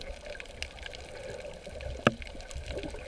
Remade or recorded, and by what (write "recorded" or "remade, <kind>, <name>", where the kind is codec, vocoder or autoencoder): recorded